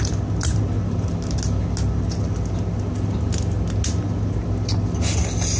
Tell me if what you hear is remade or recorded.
recorded